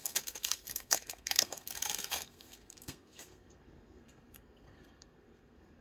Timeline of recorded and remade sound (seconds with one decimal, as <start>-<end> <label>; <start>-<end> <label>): 0.0-5.8 remade